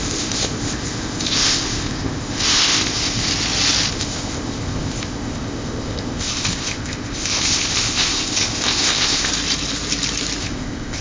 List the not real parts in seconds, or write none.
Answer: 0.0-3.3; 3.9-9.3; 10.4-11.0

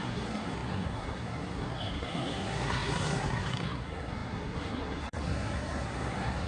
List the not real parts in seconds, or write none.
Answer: 0.0-6.5